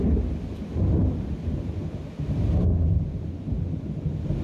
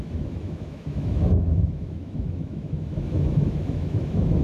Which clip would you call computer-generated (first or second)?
second